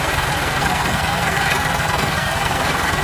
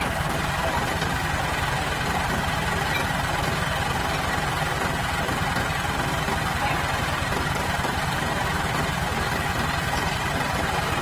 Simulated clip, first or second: first